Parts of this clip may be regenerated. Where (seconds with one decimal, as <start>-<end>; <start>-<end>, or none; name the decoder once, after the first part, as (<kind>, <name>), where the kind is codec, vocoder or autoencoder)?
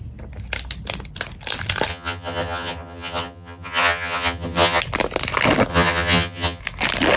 1.9-4.8 (vocoder, HiFi-GAN); 5.7-6.6